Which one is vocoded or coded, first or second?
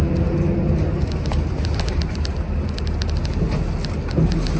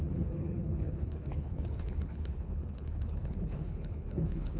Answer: second